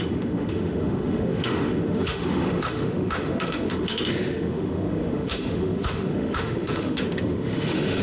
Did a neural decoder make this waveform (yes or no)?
yes